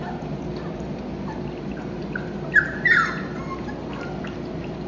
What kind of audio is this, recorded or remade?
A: recorded